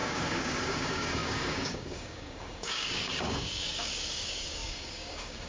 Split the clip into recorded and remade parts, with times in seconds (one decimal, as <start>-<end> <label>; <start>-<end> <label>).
0.0-5.5 remade